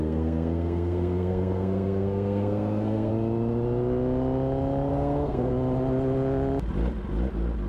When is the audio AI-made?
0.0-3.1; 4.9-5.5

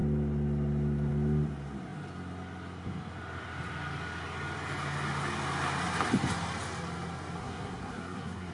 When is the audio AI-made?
7.4-8.5

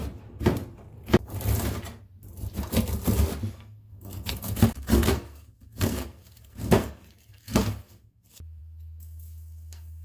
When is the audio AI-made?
3.5-10.0

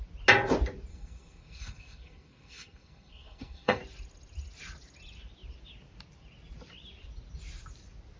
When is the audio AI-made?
0.9-3.8

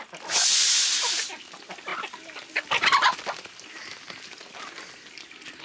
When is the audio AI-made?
none

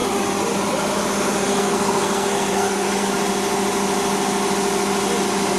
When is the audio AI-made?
1.5-3.1

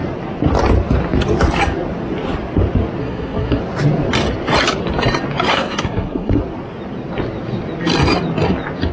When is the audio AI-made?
3.0-3.6; 5.5-6.4

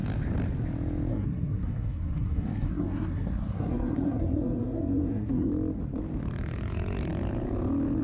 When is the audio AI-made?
1.1-5.5